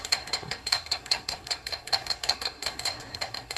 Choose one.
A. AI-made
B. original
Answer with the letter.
A